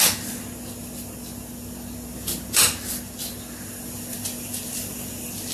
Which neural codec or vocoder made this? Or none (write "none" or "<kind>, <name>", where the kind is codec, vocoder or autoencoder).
none